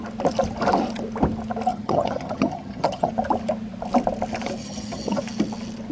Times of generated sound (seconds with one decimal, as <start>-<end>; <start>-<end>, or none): 1.7-3.1; 4.6-5.2